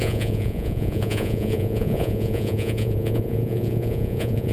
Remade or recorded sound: remade